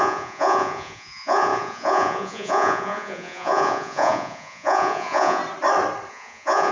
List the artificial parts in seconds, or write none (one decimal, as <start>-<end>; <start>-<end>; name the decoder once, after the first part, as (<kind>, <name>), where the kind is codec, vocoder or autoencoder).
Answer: 0.0-5.4 (vocoder, Vocos); 6.1-6.7